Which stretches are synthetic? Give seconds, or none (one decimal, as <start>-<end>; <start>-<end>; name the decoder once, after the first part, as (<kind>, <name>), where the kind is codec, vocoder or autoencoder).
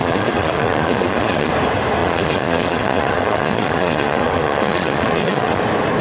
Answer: 0.0-1.5 (vocoder, Vocos); 2.0-5.6